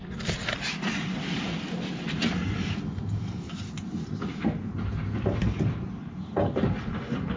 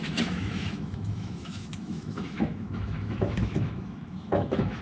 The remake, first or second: second